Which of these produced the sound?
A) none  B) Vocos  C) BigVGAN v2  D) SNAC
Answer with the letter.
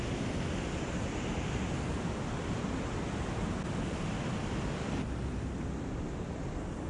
A